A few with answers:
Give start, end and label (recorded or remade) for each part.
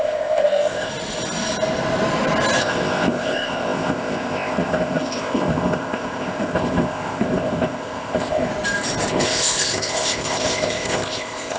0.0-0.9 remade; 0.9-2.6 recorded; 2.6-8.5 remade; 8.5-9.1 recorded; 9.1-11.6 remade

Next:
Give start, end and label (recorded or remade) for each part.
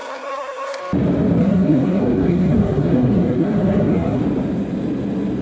0.0-0.8 remade; 0.8-1.4 recorded; 1.4-4.2 remade; 4.2-5.4 recorded